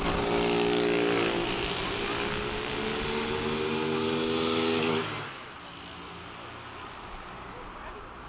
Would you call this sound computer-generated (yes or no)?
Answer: no